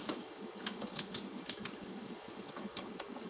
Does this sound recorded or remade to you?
remade